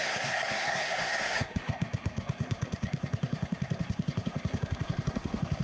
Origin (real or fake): fake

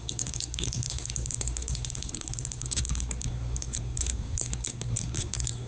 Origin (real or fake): fake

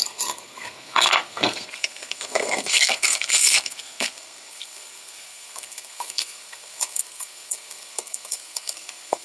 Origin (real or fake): fake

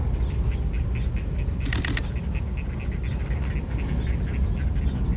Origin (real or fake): real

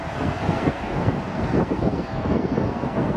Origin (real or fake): fake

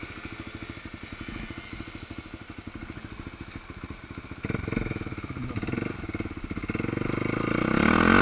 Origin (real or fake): real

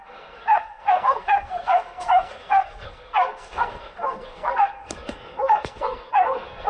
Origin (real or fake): fake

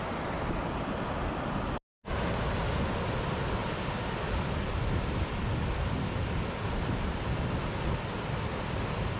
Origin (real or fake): real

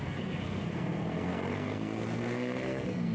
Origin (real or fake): fake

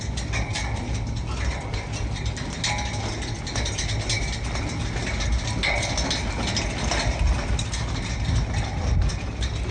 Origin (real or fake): real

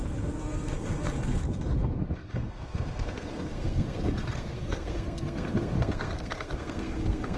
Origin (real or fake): fake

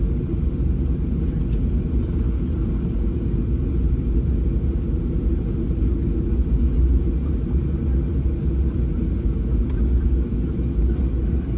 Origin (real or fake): real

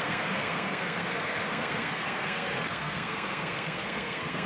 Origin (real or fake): fake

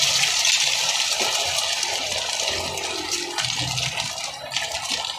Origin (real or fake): real